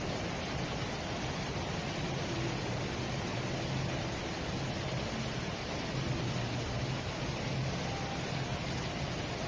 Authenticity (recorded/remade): recorded